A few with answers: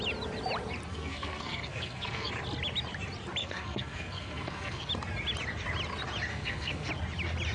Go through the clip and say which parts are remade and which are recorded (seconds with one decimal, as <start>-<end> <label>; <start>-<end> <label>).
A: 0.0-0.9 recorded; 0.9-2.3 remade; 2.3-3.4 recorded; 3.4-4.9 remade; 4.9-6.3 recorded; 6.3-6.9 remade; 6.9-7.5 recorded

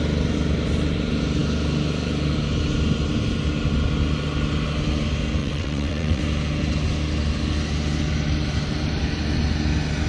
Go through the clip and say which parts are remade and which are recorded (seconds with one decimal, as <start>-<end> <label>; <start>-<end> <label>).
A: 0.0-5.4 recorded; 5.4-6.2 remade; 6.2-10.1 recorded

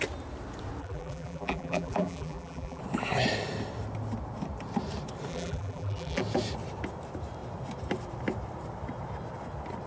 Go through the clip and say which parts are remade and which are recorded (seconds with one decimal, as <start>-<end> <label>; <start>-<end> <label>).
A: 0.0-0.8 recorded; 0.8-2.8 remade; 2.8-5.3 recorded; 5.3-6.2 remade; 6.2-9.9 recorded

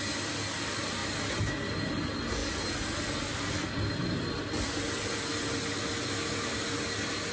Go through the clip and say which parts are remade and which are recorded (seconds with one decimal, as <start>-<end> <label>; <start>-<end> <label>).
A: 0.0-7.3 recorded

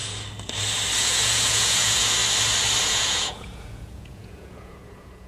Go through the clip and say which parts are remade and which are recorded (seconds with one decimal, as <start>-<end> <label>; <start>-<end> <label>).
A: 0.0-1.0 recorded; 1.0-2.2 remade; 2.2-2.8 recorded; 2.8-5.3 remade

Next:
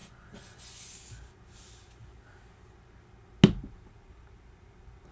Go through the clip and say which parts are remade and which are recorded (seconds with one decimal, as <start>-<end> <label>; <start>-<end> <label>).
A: 0.0-0.9 remade; 0.9-5.1 recorded